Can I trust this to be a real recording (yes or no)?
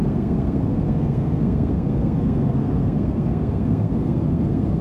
no